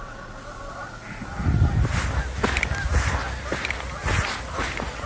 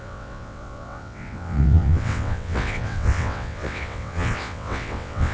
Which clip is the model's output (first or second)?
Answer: second